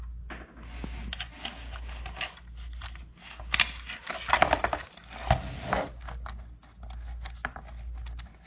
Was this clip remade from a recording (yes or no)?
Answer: no